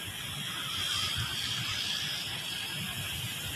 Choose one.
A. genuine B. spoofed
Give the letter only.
A